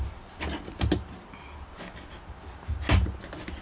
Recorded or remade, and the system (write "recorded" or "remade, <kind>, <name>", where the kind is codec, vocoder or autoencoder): recorded